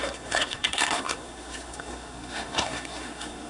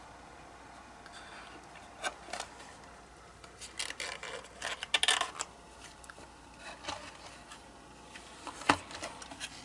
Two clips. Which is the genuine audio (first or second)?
second